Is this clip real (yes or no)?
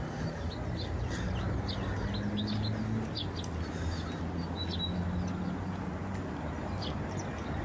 yes